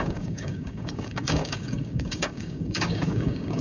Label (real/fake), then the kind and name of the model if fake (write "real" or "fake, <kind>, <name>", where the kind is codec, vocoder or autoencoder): fake, codec, DAC